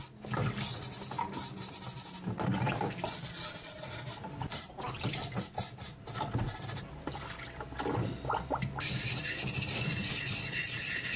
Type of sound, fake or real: real